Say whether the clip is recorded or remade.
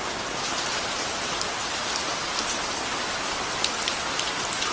recorded